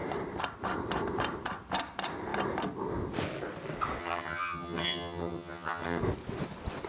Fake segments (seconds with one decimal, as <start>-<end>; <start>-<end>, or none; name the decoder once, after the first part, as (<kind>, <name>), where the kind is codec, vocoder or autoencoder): 4.0-6.0 (vocoder, HiFi-GAN)